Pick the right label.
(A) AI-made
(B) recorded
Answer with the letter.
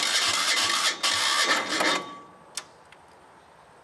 B